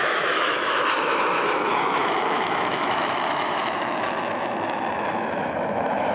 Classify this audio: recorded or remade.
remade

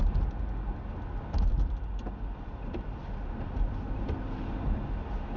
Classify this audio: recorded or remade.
recorded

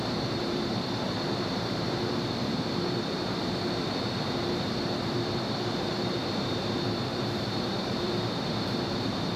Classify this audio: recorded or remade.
remade